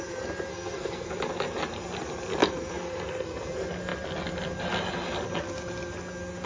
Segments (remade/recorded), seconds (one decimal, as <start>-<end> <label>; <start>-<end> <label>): 0.0-0.5 recorded; 0.5-1.1 remade; 1.1-6.5 recorded